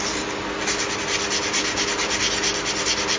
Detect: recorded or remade recorded